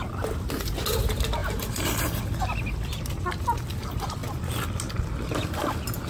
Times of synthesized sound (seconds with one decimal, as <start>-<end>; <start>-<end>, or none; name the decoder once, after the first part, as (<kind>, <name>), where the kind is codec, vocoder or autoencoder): none